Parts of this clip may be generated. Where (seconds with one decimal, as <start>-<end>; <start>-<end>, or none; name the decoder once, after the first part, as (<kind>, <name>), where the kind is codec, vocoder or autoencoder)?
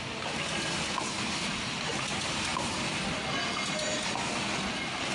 none